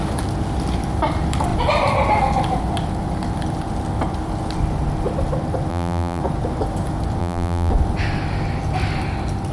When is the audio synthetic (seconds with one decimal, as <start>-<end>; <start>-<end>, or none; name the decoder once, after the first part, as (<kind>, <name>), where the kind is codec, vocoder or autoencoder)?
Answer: 5.7-6.2 (vocoder, BigVGAN v2); 7.2-7.7